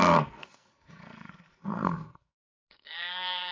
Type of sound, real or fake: fake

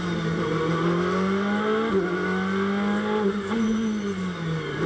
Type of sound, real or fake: real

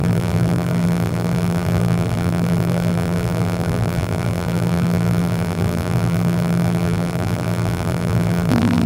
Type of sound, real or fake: fake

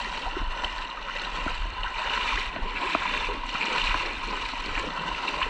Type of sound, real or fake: real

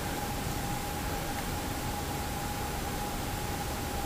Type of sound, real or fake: real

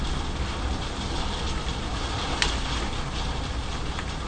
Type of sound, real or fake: real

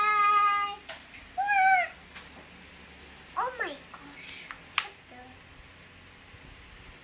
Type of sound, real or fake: real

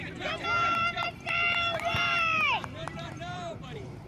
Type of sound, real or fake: fake